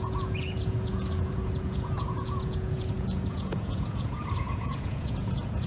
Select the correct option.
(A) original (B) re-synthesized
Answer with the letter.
B